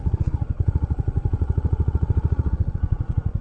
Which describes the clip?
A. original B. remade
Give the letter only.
B